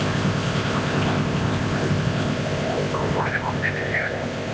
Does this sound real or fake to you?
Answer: fake